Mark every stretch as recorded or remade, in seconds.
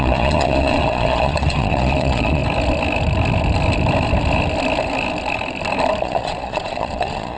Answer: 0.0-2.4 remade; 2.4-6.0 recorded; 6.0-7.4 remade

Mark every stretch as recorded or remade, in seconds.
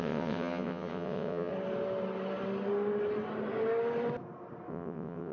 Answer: 0.0-1.5 remade; 1.5-4.7 recorded; 4.7-5.3 remade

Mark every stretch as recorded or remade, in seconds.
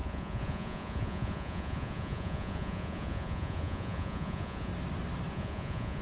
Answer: 0.0-4.7 remade; 4.7-5.3 recorded; 5.3-6.0 remade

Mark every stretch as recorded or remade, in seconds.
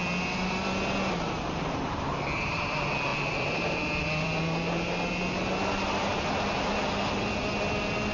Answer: 0.0-3.1 recorded; 3.1-4.4 remade; 4.4-8.1 recorded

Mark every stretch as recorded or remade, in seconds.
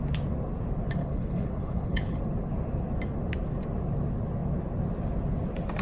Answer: 0.0-1.0 recorded; 1.0-2.2 remade; 2.2-5.8 recorded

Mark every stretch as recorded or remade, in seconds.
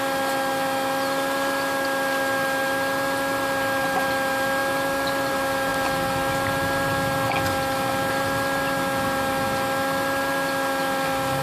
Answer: 0.0-11.4 recorded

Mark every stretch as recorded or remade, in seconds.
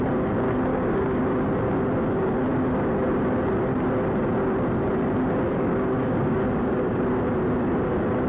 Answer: 0.0-0.7 recorded; 0.7-1.2 remade; 1.2-5.5 recorded; 5.5-7.0 remade; 7.0-8.3 recorded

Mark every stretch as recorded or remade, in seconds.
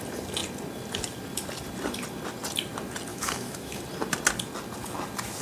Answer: 0.0-3.1 recorded; 3.1-3.8 remade; 3.8-5.4 recorded